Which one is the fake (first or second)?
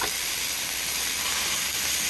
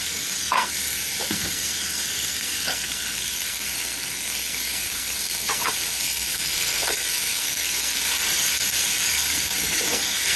second